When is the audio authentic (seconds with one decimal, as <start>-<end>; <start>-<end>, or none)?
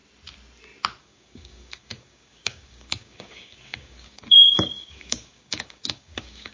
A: 0.0-1.0